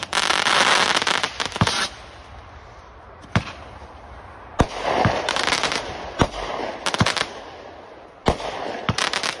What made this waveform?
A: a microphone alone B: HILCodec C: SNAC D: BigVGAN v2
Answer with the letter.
A